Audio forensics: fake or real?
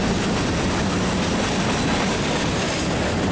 real